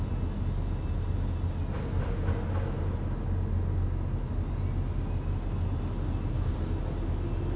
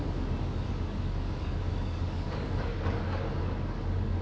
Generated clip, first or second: second